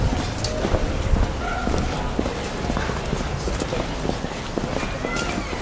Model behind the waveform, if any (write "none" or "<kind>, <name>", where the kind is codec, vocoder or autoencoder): none